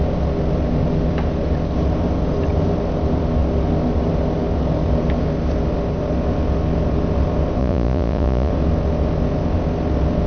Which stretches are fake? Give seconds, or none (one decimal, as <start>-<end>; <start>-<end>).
7.6-8.5